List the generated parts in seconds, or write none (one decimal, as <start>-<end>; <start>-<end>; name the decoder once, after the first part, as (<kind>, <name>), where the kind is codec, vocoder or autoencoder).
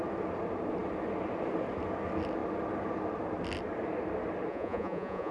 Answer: 4.5-5.3 (vocoder, Vocos)